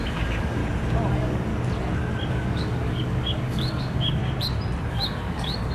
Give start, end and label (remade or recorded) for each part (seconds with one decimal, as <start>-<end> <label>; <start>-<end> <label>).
0.0-0.6 remade; 0.6-1.1 recorded; 1.1-1.5 remade; 1.5-2.3 recorded; 2.3-4.2 remade; 4.2-4.9 recorded; 4.9-5.7 remade